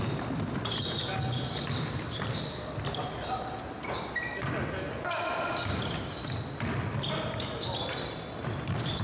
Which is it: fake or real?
real